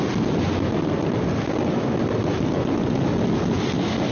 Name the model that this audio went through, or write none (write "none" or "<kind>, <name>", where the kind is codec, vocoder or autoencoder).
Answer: none